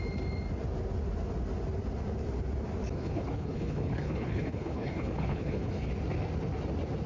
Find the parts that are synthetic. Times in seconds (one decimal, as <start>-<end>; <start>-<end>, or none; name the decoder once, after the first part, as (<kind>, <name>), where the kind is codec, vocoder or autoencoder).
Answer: 3.0-5.9 (codec, HILCodec)